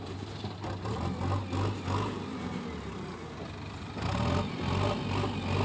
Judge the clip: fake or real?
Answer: real